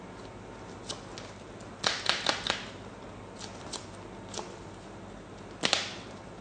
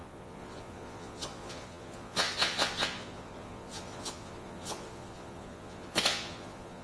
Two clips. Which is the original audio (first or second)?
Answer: first